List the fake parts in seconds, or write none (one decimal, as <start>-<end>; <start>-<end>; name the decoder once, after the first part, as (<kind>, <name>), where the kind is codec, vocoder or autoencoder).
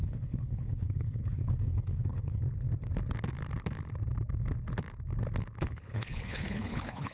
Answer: 0.0-2.4 (codec, HILCodec); 5.6-7.1